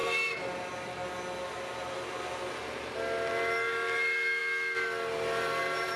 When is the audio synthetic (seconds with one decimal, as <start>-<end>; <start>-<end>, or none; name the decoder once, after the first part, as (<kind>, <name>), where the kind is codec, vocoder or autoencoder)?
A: none